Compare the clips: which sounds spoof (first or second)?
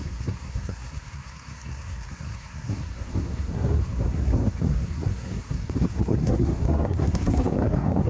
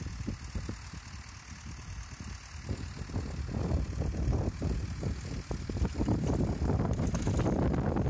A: first